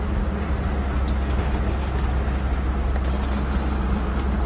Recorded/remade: recorded